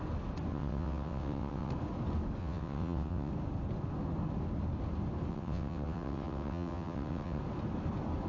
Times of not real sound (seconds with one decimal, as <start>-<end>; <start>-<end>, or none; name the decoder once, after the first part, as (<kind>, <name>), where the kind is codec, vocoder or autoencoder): 0.5-1.7 (vocoder, WaveNeXt); 2.4-3.3; 5.3-7.4